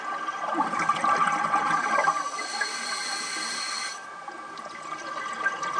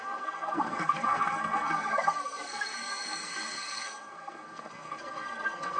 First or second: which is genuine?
first